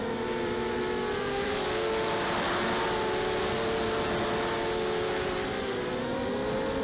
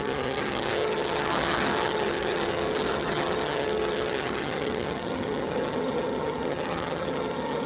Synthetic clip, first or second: second